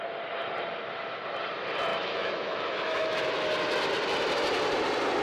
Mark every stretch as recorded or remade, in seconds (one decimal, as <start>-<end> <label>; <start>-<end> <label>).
0.0-1.9 recorded; 1.9-3.2 remade; 3.2-5.2 recorded